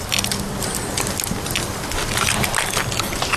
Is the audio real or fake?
real